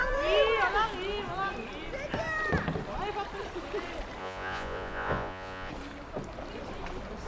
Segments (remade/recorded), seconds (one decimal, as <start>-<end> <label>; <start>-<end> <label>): 0.0-4.2 recorded; 4.2-5.7 remade; 5.7-7.3 recorded